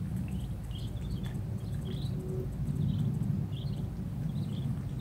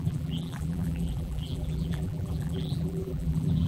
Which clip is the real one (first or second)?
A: first